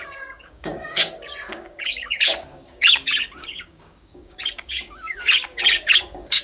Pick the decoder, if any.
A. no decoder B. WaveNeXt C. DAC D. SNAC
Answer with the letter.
C